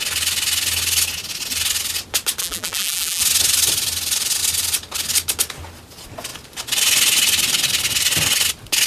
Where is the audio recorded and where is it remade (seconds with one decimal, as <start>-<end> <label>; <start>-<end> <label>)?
0.0-2.4 recorded; 2.4-3.2 remade; 3.2-8.9 recorded